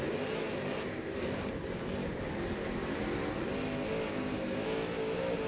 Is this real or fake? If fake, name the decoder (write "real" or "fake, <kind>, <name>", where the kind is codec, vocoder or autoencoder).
real